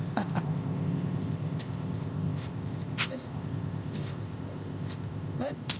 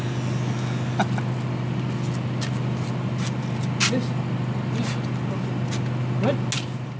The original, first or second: second